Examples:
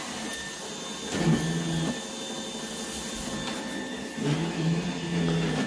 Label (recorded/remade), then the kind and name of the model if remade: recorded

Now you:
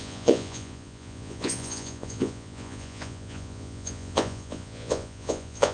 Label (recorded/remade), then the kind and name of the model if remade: remade, vocoder, Vocos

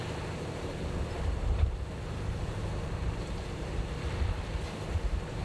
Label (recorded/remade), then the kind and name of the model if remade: remade, vocoder, BigVGAN v2